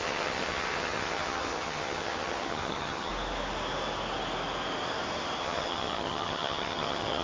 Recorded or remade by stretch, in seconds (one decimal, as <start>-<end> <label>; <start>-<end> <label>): 0.0-3.1 remade; 3.1-5.4 recorded; 5.4-7.2 remade